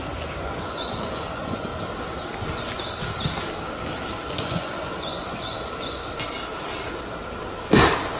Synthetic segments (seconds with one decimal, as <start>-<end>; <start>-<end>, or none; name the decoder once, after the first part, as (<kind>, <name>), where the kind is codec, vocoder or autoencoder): 0.0-1.7 (vocoder, Vocos); 4.3-6.0